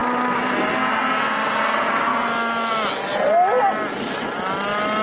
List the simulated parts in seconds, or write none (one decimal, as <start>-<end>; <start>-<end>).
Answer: none